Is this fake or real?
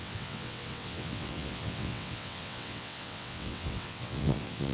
fake